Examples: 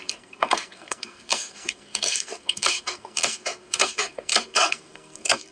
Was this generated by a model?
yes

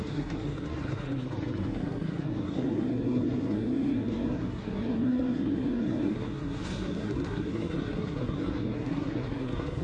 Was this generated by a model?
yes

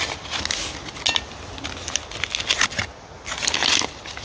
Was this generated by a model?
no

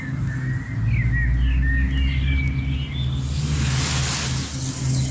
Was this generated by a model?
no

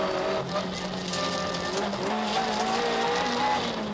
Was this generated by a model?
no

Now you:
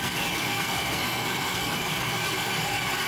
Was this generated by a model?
yes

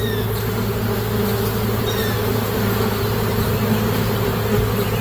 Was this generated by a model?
no